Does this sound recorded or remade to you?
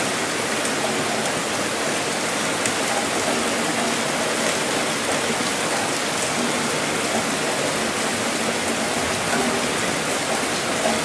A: recorded